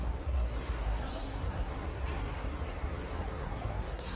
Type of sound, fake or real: fake